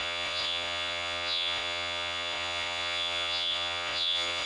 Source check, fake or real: fake